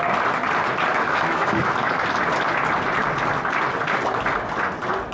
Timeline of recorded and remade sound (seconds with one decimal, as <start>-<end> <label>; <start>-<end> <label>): 0.0-0.9 recorded; 0.9-1.7 remade; 1.7-5.1 recorded